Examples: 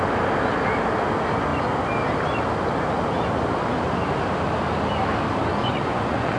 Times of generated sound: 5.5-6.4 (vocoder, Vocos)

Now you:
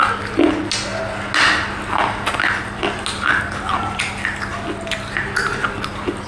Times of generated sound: none

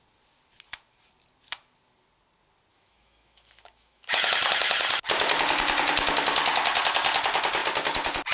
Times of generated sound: 2.7-4.3 (autoencoder, DAC-VAE)

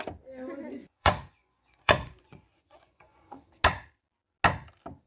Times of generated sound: 0.8-3.4 (vocoder, Vocos)

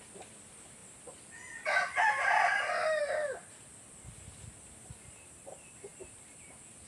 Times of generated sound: 0.0-0.8 (vocoder, BigVGAN v2); 3.0-5.9; 6.4-6.9

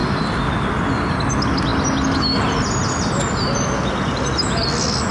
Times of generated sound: none

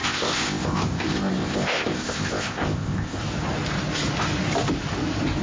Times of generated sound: 0.0-3.2 (codec, ZipCodec)